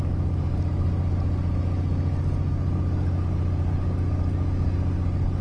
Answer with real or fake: real